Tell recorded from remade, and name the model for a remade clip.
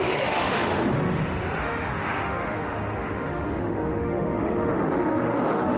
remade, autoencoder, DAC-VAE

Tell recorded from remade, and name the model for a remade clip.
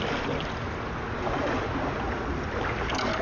recorded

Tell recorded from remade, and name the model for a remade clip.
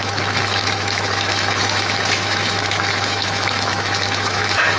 remade, autoencoder, DAC-VAE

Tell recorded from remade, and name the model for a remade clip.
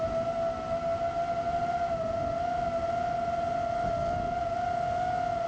recorded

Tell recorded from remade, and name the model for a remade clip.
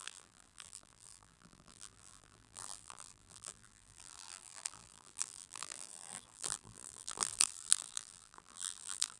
remade, vocoder, BigVGAN v2